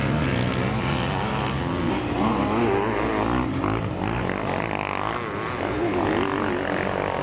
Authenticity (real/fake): real